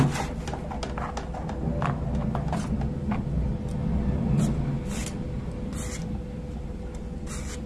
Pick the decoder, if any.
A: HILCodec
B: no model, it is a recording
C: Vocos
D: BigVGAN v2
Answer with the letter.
B